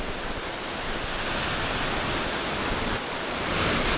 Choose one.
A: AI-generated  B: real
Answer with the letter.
B